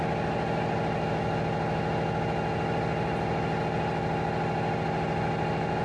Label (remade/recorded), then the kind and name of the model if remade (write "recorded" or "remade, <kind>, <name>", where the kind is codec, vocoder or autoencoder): recorded